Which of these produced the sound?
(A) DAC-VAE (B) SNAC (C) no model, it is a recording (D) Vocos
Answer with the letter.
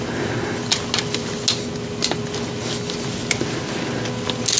C